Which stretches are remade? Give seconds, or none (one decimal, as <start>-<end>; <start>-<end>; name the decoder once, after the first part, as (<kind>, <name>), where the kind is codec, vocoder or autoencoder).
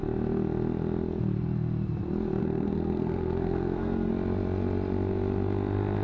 2.4-4.1 (codec, SNAC)